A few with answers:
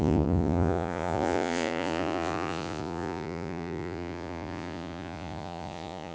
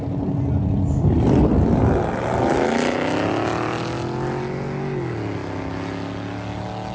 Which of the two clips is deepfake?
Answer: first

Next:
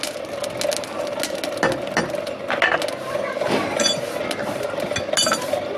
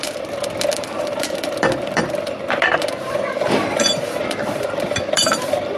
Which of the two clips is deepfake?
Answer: second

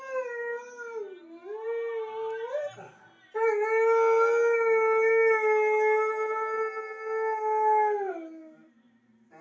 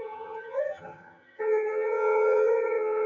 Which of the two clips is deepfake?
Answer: second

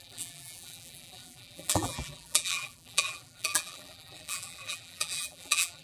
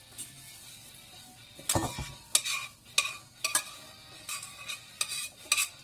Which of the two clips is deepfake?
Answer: first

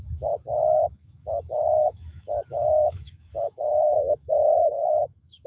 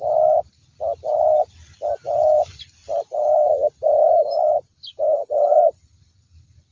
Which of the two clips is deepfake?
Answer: first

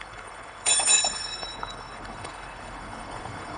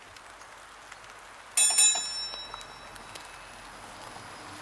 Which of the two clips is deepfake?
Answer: first